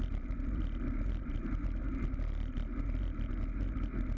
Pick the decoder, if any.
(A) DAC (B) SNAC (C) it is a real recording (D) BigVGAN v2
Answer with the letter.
C